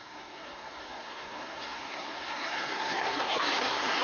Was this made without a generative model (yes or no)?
no